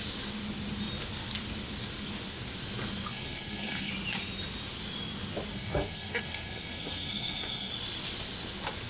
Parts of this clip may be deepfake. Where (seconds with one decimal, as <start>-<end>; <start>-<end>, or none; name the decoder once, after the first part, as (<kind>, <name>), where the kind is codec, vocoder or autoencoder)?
3.1-3.9 (codec, SNAC); 5.5-7.7